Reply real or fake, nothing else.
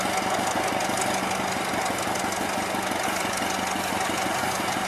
real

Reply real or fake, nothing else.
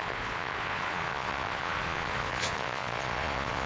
fake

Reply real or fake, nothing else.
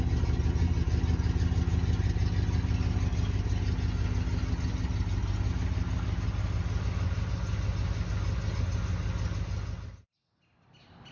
real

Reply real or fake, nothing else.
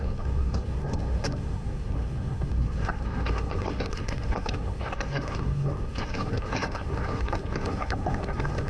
fake